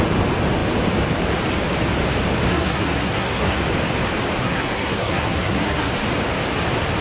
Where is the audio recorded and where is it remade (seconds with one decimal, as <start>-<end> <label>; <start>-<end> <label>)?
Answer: 0.0-2.5 recorded; 2.5-3.6 remade; 3.6-4.4 recorded; 4.4-5.9 remade; 5.9-7.0 recorded